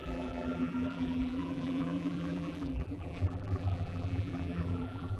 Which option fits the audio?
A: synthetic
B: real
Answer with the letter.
A